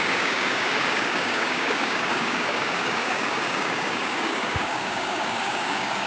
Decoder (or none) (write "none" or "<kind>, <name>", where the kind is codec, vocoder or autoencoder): codec, DAC